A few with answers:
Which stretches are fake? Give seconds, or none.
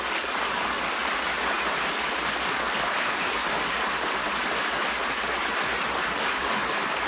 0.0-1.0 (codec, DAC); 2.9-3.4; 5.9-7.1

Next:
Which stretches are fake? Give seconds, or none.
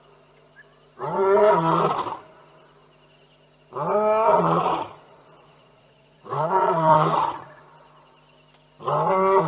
4.3-7.6 (vocoder, Vocos)